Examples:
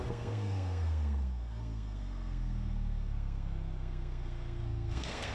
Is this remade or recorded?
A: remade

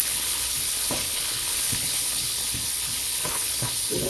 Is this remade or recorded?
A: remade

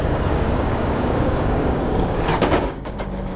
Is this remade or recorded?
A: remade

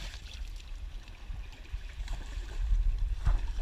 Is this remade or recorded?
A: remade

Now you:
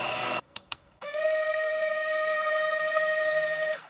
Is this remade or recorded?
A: remade